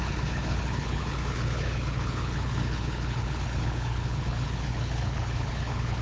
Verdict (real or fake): fake